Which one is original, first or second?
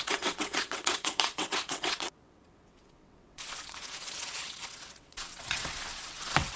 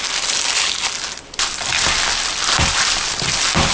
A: second